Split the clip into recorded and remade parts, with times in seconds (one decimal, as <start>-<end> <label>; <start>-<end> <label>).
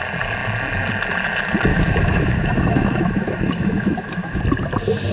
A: 0.0-1.7 recorded; 1.7-4.4 remade; 4.4-5.1 recorded